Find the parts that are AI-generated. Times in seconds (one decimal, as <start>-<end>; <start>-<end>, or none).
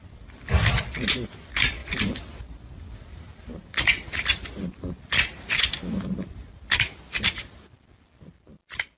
1.8-4.5